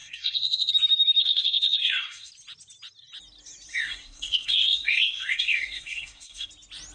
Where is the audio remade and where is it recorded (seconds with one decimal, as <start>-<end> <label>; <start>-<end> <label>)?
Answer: 0.0-0.7 remade; 0.7-1.2 recorded; 1.2-2.3 remade; 2.3-3.7 recorded; 3.7-6.5 remade; 6.5-6.9 recorded